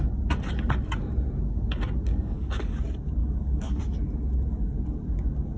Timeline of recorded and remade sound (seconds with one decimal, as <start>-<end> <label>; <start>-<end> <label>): 0.0-2.1 recorded; 2.1-2.8 remade; 2.8-3.2 recorded; 3.2-3.8 remade; 3.8-5.6 recorded